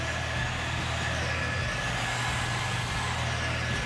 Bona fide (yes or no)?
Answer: yes